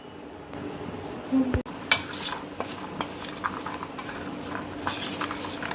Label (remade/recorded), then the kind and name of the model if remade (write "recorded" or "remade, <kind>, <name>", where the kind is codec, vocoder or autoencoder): recorded